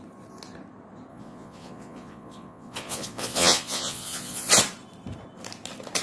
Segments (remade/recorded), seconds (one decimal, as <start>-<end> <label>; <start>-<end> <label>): 0.0-1.1 recorded; 1.1-4.5 remade; 4.5-6.0 recorded